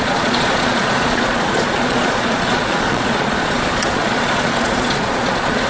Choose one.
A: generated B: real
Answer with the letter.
A